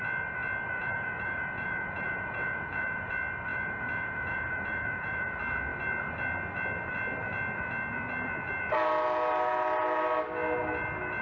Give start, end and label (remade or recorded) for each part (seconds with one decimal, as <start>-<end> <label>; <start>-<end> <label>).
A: 0.0-0.8 recorded; 0.8-3.1 remade; 3.1-3.5 recorded; 3.5-5.3 remade; 5.3-11.2 recorded